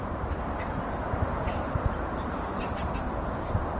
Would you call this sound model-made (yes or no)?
yes